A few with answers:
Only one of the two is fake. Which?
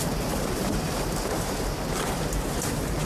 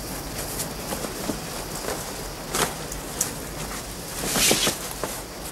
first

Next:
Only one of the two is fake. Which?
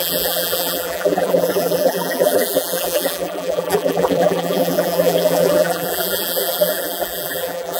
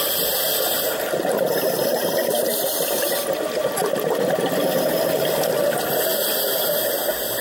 first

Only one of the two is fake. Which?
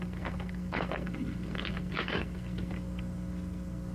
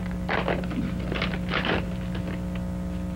first